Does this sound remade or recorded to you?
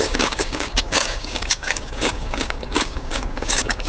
remade